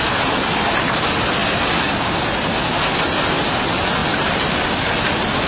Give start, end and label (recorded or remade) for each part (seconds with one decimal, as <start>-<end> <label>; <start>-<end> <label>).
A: 0.0-5.5 recorded